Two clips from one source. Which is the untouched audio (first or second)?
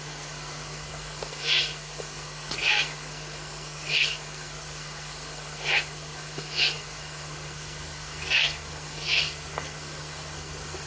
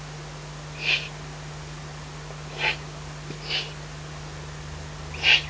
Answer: second